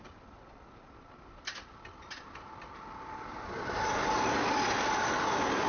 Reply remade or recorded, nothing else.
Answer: recorded